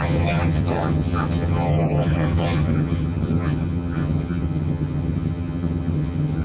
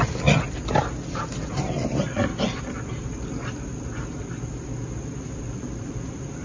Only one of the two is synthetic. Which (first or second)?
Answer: first